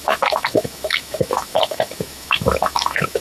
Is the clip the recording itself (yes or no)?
no